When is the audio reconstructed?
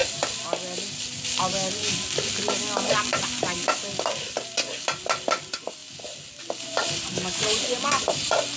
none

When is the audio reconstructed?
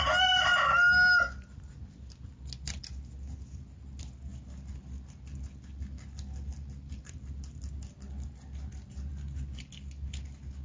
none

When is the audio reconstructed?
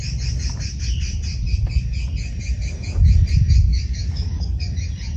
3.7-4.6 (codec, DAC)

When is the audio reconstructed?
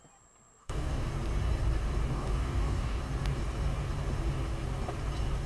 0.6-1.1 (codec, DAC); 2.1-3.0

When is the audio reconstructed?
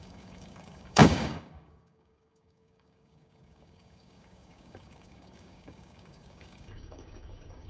0.0-7.7 (codec, DAC)